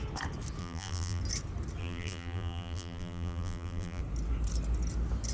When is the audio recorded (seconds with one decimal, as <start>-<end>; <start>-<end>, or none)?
0.0-0.6; 1.2-1.8; 4.0-5.3